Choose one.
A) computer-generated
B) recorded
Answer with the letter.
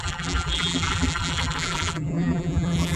A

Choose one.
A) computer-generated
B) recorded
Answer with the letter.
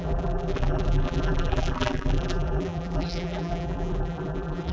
A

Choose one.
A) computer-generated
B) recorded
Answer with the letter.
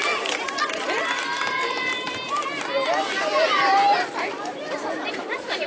A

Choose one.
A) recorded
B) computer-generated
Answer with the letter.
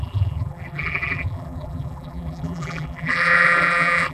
B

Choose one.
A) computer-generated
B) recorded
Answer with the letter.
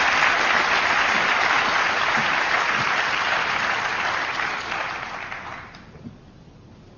A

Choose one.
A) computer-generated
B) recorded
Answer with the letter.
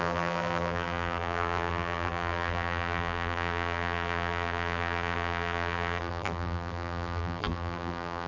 A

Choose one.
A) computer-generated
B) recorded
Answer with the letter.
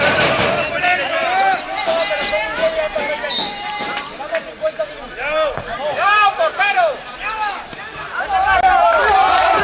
A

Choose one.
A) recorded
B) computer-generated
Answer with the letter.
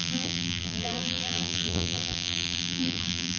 B